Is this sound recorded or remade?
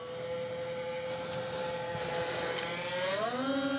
recorded